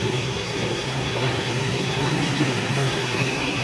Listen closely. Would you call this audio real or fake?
fake